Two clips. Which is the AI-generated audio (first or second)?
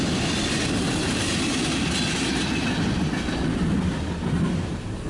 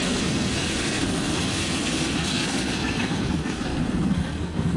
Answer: second